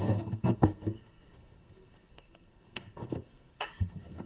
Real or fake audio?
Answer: fake